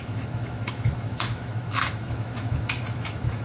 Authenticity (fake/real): fake